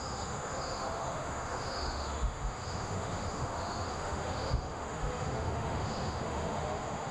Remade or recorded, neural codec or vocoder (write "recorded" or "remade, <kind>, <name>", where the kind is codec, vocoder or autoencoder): remade, autoencoder, DAC-VAE